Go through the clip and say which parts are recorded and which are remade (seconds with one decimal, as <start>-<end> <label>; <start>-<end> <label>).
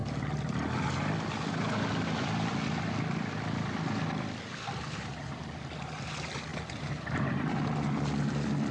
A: 0.0-6.5 recorded; 6.5-7.5 remade; 7.5-8.7 recorded